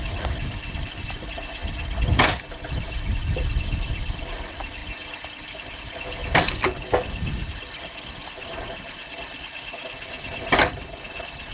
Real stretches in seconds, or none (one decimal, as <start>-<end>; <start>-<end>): 1.6-2.8; 4.8-5.8; 7.4-9.2